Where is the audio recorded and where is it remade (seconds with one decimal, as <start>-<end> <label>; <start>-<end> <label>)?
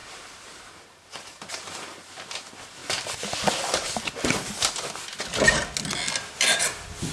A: 0.0-1.6 remade; 1.6-7.1 recorded